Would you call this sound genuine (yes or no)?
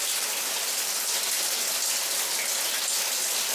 yes